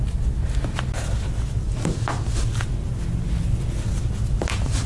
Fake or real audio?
real